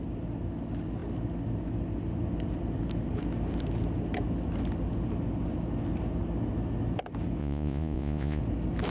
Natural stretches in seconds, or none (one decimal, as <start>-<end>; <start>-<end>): 0.0-7.4; 8.4-8.9